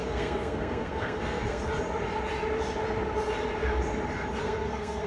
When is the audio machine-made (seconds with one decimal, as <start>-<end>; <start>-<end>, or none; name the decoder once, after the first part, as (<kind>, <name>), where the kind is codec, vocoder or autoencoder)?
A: 0.0-1.6 (codec, SNAC); 4.4-5.1